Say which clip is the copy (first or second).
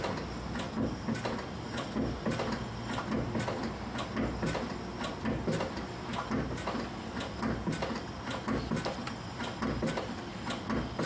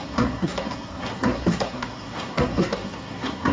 second